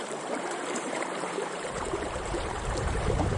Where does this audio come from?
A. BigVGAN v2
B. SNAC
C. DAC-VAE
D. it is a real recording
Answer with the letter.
A